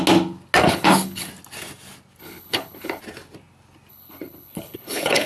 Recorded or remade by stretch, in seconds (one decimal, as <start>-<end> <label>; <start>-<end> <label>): 0.0-0.6 recorded; 0.6-1.3 remade; 1.3-2.2 recorded; 2.2-3.0 remade; 3.0-3.9 recorded; 3.9-5.3 remade